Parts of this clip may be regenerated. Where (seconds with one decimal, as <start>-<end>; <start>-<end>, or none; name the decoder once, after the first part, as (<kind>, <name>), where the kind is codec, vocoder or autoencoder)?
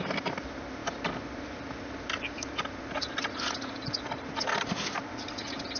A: none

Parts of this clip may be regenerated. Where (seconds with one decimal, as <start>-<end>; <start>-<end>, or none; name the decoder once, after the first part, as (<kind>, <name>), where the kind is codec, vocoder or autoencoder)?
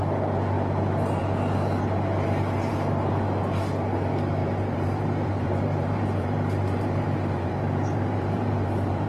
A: 4.4-9.1 (vocoder, BigVGAN v2)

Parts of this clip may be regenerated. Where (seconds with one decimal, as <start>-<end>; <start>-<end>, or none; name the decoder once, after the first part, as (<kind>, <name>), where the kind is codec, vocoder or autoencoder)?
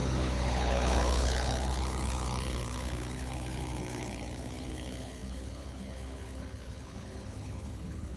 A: 0.0-8.2 (codec, HILCodec)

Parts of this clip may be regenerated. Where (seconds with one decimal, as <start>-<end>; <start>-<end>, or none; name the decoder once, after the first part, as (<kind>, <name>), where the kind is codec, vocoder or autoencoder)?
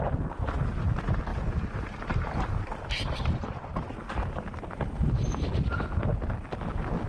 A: none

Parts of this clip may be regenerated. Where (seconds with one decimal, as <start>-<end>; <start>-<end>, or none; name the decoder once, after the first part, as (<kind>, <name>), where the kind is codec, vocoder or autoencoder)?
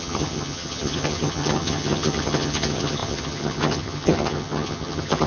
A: 0.0-5.3 (vocoder, HiFi-GAN)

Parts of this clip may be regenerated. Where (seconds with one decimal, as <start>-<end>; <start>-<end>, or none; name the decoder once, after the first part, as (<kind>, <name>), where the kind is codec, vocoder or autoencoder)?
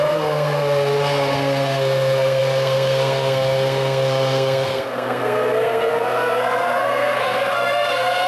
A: 0.0-8.3 (codec, SNAC)